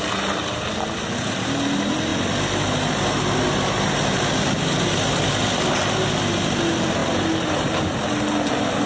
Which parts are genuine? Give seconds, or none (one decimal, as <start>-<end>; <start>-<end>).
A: 0.0-8.9